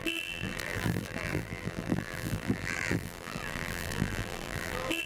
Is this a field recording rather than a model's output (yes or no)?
no